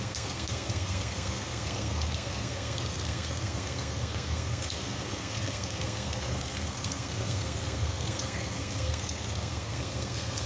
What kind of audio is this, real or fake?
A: fake